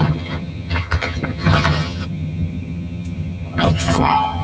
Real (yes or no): no